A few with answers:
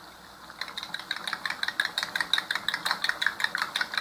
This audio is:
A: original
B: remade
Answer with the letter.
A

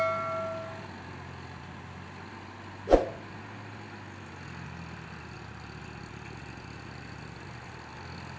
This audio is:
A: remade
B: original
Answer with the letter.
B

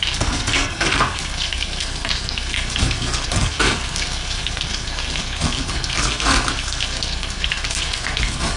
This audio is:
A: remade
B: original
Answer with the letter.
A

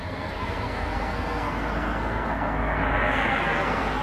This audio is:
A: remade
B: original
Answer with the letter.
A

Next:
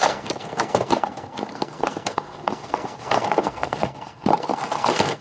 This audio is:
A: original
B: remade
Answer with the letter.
B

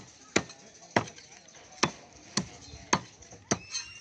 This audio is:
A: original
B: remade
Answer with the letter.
A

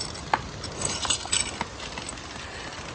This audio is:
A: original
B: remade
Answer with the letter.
A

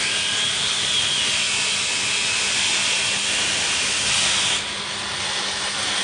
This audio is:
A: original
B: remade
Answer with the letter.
A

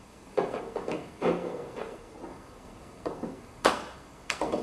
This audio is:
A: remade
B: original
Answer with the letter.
A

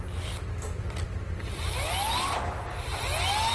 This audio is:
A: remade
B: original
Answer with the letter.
B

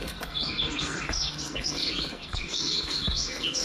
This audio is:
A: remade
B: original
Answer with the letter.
A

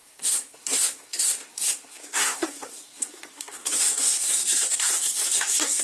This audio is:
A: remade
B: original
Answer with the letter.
A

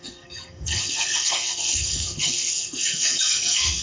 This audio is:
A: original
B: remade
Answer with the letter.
B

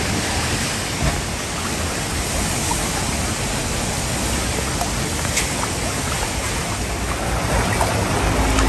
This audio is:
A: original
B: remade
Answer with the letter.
A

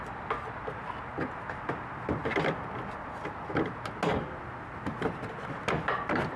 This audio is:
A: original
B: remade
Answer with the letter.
A